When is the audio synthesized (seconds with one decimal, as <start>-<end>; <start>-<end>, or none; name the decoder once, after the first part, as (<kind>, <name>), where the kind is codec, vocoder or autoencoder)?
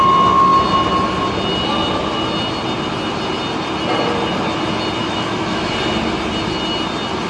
5.0-5.7 (autoencoder, DAC-VAE)